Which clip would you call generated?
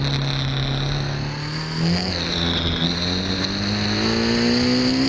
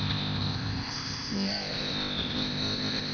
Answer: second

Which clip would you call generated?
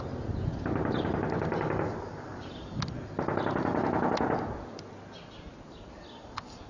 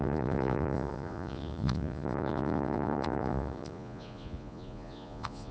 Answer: second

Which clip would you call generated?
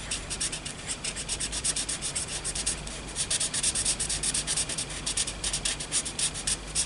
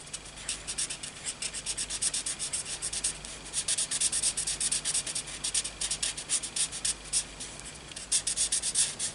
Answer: first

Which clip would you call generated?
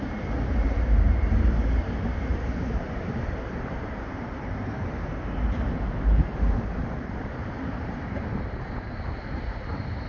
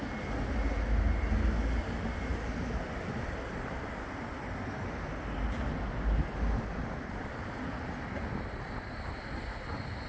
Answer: first